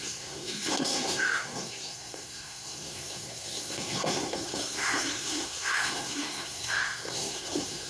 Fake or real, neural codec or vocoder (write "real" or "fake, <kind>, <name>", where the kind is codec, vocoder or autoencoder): fake, codec, SNAC